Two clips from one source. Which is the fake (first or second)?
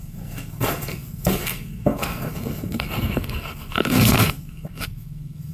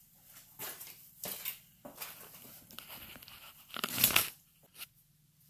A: first